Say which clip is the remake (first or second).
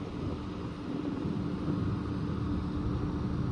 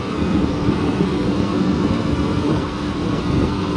second